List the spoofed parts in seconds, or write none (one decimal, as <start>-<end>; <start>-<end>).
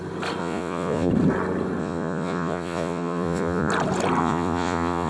0.4-1.1; 1.8-3.7; 4.2-5.1